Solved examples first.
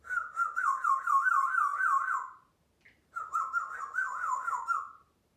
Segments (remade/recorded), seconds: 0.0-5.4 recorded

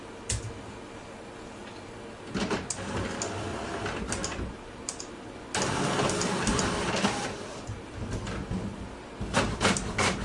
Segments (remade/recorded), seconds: 0.0-3.5 recorded; 3.5-5.0 remade; 5.0-6.5 recorded; 6.5-10.2 remade

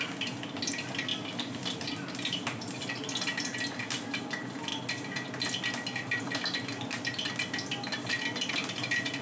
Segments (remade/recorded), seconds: 0.0-1.1 recorded; 1.1-2.8 remade; 2.8-9.2 recorded

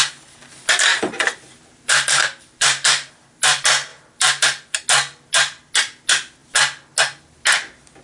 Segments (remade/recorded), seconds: 0.0-0.9 recorded; 0.9-3.1 remade; 3.1-3.9 recorded; 3.9-4.7 remade; 4.7-8.0 recorded